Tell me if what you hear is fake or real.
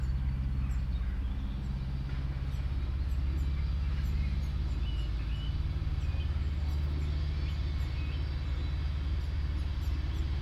real